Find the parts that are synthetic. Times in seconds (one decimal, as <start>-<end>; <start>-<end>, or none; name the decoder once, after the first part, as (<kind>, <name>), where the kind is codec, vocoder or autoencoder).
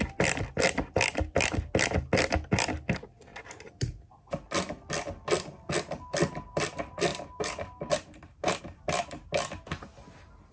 3.3-4.2 (vocoder, BigVGAN v2); 7.1-8.6